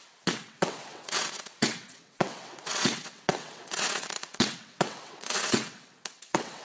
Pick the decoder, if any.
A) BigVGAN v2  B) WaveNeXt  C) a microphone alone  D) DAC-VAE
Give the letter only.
B